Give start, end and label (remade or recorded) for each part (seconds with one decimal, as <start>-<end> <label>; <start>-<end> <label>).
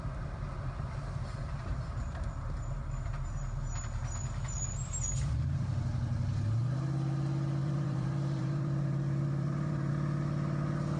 0.0-1.4 recorded; 1.4-3.1 remade; 3.1-7.6 recorded; 7.6-9.9 remade; 9.9-11.0 recorded